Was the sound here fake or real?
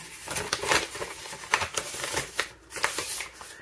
real